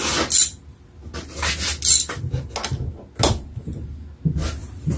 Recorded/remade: recorded